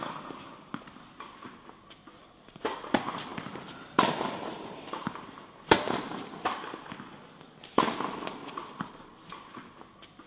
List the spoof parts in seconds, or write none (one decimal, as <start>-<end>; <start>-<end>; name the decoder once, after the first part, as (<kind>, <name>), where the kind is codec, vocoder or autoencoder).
3.3-6.0 (vocoder, BigVGAN v2); 8.4-8.9

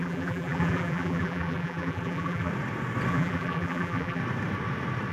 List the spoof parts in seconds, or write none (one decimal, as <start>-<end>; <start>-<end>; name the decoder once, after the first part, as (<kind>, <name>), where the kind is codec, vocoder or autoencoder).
0.0-2.5 (vocoder, BigVGAN v2); 3.1-4.2

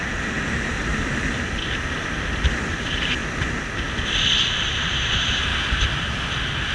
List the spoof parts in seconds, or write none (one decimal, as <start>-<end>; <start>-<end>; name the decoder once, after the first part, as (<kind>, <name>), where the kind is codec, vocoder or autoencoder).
0.0-0.9 (vocoder, BigVGAN v2); 2.7-3.2; 4.8-5.5

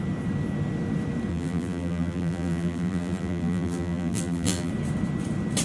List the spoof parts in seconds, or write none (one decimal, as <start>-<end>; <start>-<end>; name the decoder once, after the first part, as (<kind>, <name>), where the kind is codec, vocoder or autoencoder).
1.3-4.7 (vocoder, BigVGAN v2)

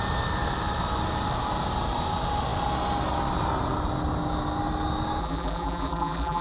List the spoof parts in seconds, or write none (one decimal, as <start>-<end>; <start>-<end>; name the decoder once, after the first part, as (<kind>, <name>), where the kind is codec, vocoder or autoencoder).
5.2-6.4 (vocoder, BigVGAN v2)

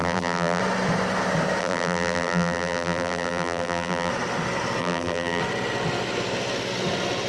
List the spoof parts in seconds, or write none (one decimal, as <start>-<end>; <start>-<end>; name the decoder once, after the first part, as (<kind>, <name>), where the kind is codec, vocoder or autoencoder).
0.0-0.6 (vocoder, BigVGAN v2); 1.6-4.1; 4.8-5.4

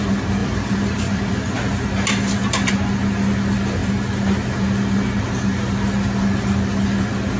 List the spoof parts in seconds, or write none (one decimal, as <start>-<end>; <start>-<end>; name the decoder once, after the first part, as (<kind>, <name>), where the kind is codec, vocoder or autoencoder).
0.4-1.5 (vocoder, BigVGAN v2)

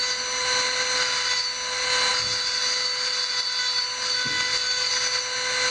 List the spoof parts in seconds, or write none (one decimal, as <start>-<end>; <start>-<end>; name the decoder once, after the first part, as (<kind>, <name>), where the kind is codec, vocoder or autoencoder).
none